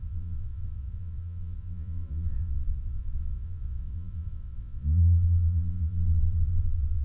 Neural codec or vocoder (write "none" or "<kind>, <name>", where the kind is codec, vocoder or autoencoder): vocoder, Vocos